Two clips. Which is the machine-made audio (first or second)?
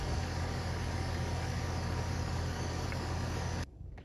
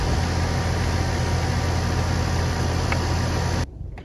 first